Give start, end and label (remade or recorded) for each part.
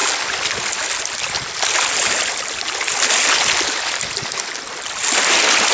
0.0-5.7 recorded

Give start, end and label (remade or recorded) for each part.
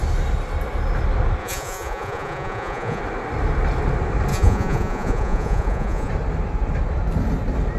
0.0-1.4 recorded; 1.4-3.0 remade; 3.0-4.3 recorded; 4.3-6.1 remade; 6.1-7.8 recorded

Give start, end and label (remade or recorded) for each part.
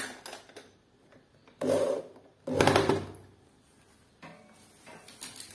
0.0-5.5 recorded